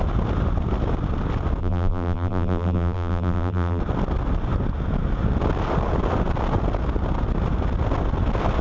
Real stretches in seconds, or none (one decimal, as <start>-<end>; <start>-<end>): 0.0-1.6; 3.8-8.6